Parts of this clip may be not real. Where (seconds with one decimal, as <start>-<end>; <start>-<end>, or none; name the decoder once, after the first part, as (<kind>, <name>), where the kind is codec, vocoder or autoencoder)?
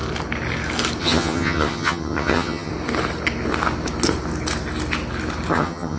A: 1.0-2.7 (vocoder, HiFi-GAN); 5.5-6.0